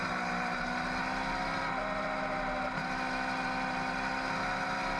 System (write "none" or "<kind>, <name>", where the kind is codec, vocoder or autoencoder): none